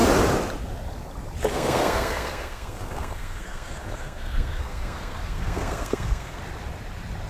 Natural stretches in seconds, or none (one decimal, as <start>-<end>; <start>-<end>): 0.0-1.5; 6.4-7.3